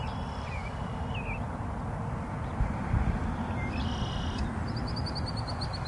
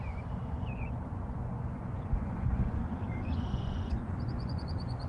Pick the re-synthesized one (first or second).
second